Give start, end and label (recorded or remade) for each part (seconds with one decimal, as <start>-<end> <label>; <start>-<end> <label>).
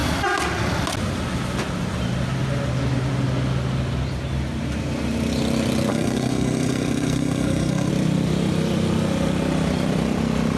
0.0-5.9 recorded; 5.9-7.9 remade; 7.9-10.6 recorded